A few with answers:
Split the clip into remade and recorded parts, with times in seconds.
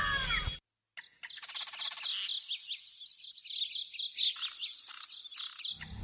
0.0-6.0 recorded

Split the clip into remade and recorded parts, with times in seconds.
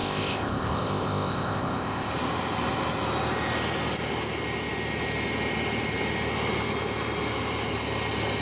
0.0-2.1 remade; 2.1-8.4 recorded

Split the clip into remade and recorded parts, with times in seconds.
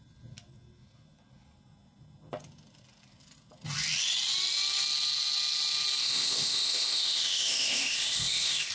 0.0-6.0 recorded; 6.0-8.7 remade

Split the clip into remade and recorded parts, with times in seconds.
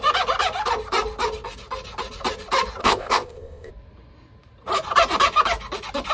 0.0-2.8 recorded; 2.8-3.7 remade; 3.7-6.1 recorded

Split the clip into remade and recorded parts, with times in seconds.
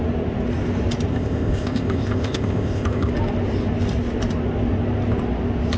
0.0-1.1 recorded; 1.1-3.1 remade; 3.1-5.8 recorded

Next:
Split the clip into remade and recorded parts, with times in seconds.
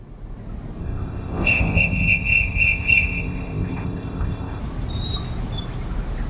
0.0-0.8 recorded; 0.8-4.6 remade; 4.6-6.3 recorded